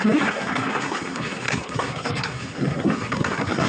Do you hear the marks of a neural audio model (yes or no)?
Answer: yes